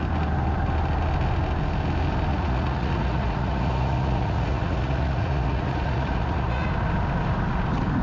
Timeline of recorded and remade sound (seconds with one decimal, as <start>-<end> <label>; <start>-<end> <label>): 0.0-2.3 recorded; 2.3-6.7 remade; 6.7-8.0 recorded